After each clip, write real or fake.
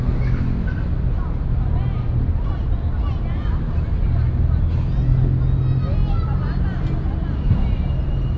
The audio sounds real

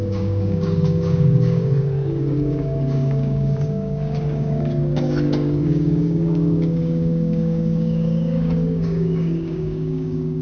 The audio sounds fake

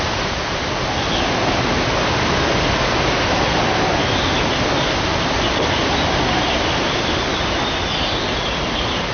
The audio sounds real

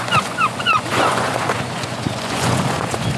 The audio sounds fake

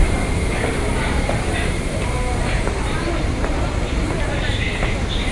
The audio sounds fake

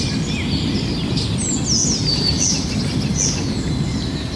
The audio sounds real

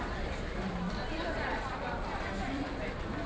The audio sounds fake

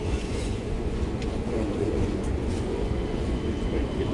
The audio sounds fake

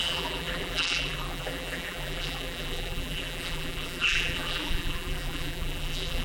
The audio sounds fake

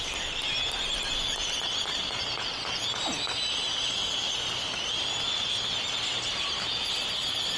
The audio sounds real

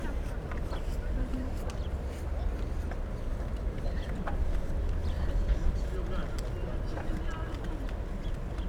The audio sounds real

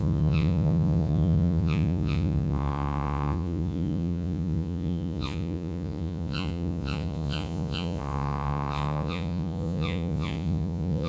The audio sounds fake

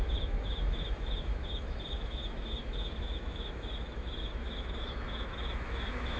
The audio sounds fake